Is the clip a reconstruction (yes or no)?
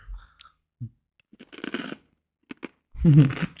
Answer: no